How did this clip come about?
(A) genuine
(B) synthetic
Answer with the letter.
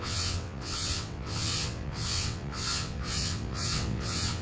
B